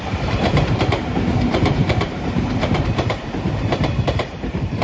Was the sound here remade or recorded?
remade